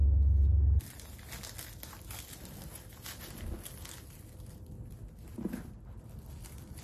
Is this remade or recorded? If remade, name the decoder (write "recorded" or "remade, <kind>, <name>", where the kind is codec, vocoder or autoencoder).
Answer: recorded